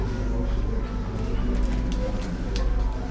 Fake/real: real